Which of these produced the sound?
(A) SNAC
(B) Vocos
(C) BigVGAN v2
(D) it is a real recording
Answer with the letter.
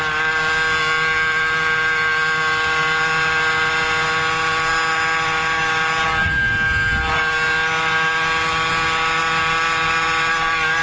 D